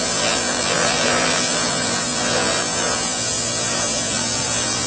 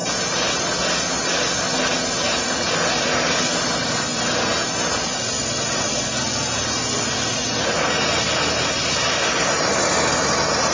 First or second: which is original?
second